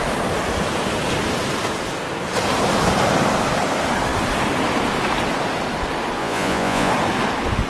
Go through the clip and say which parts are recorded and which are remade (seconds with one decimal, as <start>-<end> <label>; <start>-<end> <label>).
0.0-6.2 recorded; 6.2-6.9 remade; 6.9-7.7 recorded